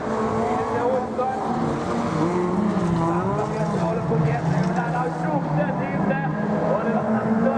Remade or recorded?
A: recorded